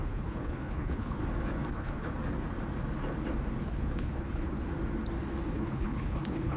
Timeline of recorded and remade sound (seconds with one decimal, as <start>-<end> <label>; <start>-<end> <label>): 0.0-1.2 remade; 1.2-1.7 recorded; 1.7-2.1 remade; 2.1-3.6 recorded; 3.6-4.7 remade; 4.7-5.5 recorded; 5.5-6.6 remade